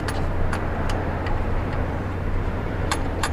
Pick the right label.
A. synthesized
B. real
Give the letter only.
A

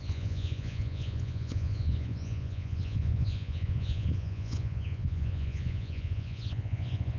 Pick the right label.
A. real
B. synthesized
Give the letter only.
B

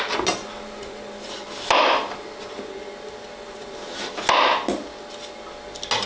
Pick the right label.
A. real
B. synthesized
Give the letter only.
A